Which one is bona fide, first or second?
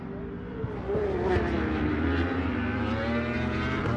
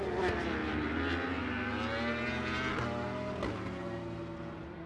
second